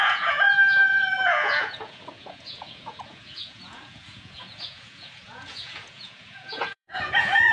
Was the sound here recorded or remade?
remade